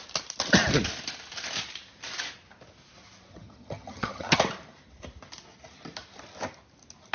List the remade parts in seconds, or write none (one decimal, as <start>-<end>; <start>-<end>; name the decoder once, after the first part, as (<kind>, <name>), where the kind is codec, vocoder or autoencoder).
3.3-4.4 (vocoder, HiFi-GAN)

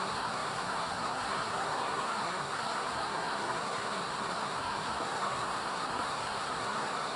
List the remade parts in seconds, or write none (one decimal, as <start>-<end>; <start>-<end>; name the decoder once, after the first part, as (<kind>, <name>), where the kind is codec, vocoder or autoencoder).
0.0-7.2 (codec, SNAC)